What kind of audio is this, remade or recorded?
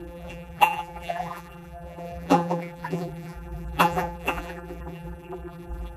remade